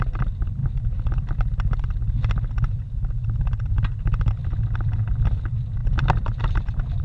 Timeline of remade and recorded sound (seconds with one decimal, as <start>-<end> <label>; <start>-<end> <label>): 0.0-7.0 recorded